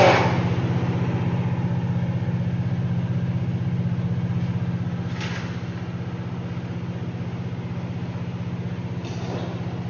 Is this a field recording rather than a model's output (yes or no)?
yes